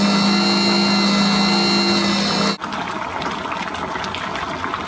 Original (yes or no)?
yes